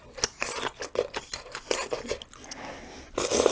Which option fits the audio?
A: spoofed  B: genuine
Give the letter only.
B